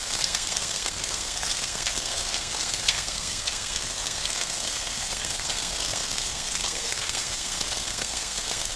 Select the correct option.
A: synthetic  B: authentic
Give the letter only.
A